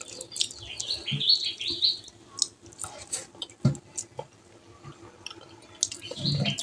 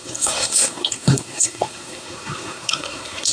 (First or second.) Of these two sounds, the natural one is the first